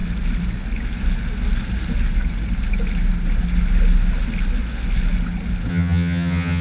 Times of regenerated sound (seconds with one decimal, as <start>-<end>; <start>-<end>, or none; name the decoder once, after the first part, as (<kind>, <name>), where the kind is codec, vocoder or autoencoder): 5.7-6.6 (vocoder, HiFi-GAN)